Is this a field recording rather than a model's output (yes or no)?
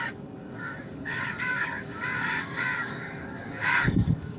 no